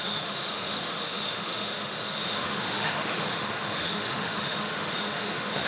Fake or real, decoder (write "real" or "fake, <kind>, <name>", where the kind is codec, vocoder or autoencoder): fake, autoencoder, DAC-VAE